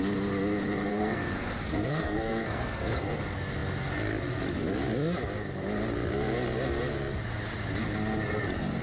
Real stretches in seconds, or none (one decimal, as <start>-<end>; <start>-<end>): 0.0-0.9; 3.2-8.8